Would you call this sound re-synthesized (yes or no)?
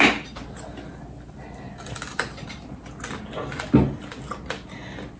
no